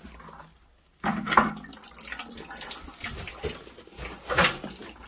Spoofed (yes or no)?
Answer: no